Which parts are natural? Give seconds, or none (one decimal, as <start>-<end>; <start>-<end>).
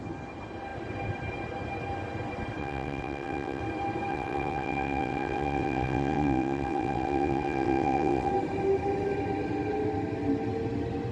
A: 0.0-2.6; 3.6-4.1; 8.3-11.1